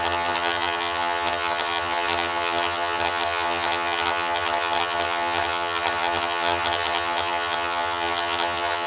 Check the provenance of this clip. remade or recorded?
remade